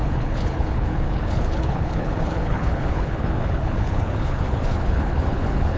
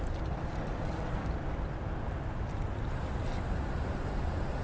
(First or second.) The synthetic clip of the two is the first